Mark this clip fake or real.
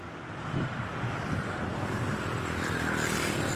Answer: real